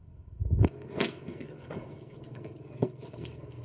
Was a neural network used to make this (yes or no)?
yes